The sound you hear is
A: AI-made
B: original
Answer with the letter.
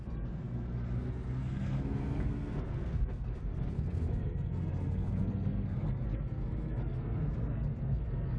A